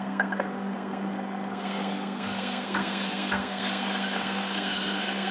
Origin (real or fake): fake